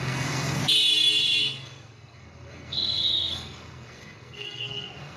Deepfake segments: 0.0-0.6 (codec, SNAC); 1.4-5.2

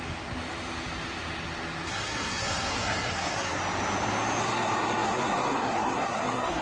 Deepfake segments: 1.9-3.6 (codec, SNAC); 4.4-6.6

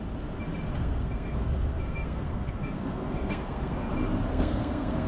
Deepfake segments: 0.8-3.9 (codec, SNAC); 4.3-5.1

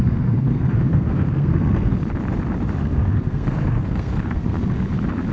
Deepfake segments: 0.0-1.9 (codec, SNAC); 2.8-4.8

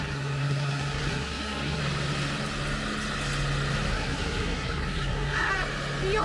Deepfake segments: 0.0-1.8 (codec, SNAC); 3.9-5.5

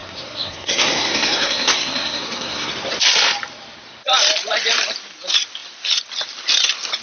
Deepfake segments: 0.0-2.7 (codec, SNAC)